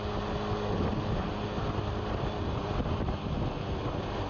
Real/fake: real